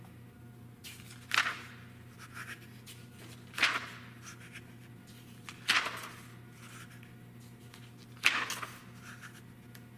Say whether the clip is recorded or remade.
recorded